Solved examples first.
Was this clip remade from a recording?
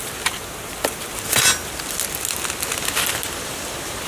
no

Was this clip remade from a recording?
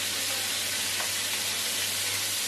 no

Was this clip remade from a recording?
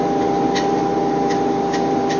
no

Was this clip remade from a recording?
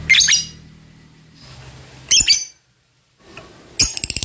no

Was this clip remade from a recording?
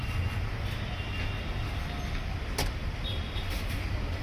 no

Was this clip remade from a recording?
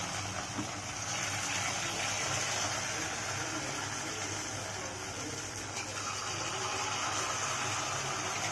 no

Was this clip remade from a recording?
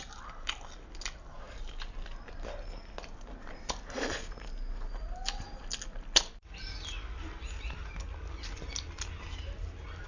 no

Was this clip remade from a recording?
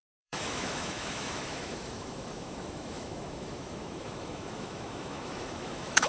yes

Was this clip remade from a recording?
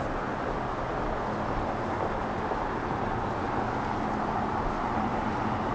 no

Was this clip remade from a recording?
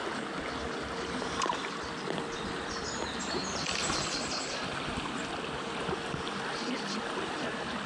no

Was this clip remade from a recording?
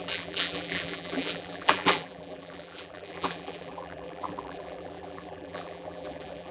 yes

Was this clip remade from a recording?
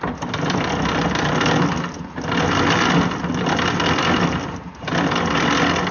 no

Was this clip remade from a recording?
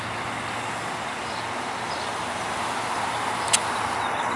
no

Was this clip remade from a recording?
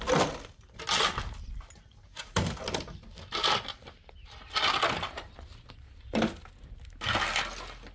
no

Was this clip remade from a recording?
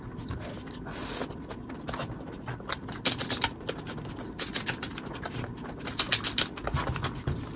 no